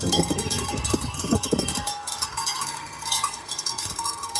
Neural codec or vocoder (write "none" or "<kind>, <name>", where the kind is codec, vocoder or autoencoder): codec, SNAC